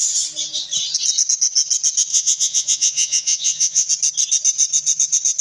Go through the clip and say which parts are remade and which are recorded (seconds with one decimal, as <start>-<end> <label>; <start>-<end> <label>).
0.0-2.1 recorded; 2.1-3.9 remade; 3.9-5.4 recorded